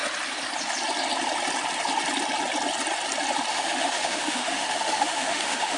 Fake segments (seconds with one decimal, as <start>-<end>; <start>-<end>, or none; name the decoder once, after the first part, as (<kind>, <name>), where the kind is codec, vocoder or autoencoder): 3.5-5.8 (autoencoder, DAC-VAE)

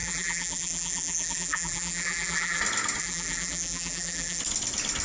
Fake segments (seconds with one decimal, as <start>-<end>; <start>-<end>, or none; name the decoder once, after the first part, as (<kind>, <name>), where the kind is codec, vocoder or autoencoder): 0.0-2.6 (vocoder, BigVGAN v2); 3.0-4.4

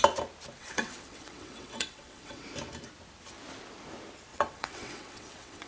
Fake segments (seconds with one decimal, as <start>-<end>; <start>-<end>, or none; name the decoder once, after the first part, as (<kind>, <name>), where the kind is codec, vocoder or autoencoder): 0.6-2.4 (vocoder, WaveNeXt); 4.3-5.7

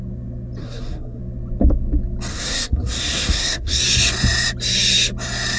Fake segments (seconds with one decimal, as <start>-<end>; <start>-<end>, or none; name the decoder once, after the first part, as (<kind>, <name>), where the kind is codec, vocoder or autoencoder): 0.6-1.2 (codec, SNAC); 2.3-3.8

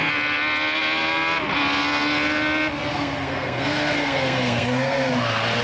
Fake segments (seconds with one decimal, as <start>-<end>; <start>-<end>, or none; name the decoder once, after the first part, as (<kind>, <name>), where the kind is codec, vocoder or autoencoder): 2.9-5.1 (codec, SNAC)